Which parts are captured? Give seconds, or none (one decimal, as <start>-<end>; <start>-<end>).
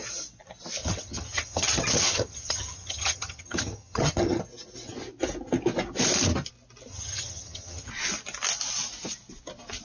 0.0-0.8; 4.4-6.9; 7.9-9.8